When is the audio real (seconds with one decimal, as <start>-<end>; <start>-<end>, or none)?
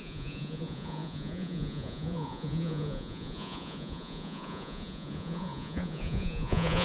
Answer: none